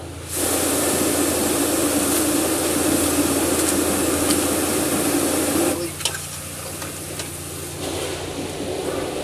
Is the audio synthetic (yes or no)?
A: no